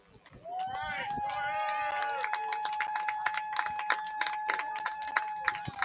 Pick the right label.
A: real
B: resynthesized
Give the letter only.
A